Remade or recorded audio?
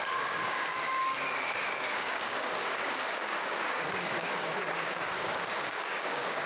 remade